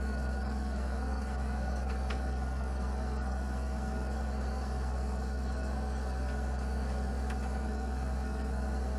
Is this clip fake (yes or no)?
yes